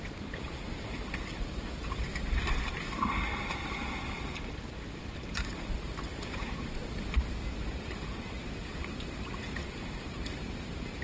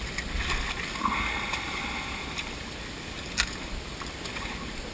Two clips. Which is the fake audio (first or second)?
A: first